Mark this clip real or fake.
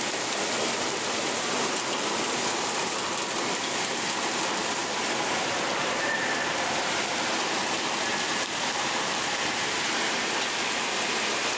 real